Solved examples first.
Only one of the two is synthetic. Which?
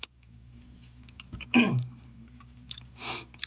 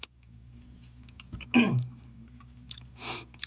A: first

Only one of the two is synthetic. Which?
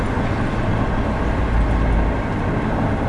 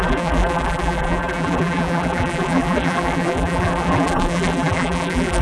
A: second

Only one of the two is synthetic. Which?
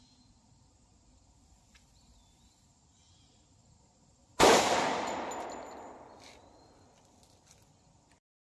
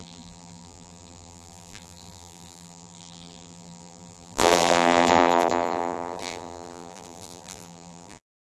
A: second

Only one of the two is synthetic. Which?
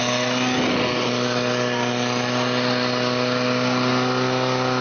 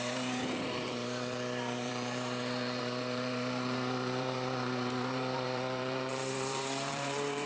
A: second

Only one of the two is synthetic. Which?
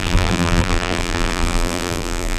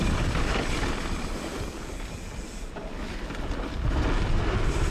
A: first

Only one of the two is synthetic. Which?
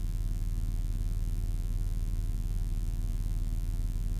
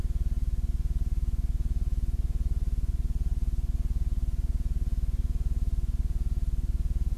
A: first